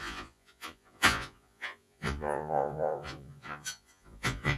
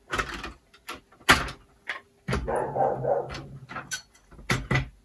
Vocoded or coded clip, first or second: first